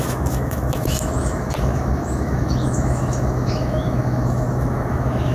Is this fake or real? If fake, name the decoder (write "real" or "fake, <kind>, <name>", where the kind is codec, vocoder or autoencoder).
fake, autoencoder, DAC-VAE